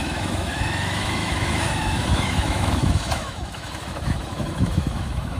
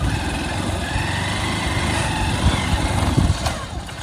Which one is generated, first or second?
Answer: first